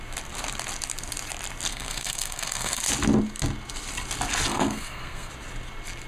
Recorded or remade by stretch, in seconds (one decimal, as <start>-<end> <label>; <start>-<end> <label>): 0.0-1.7 recorded; 1.7-2.8 remade; 2.8-4.5 recorded; 4.5-5.3 remade; 5.3-6.1 recorded